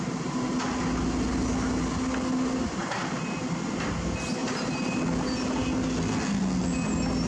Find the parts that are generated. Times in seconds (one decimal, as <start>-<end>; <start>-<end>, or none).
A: 4.4-5.0